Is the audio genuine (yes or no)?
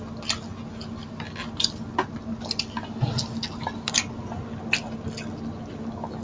yes